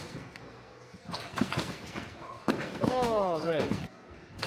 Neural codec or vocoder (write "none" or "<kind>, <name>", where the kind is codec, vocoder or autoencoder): codec, SNAC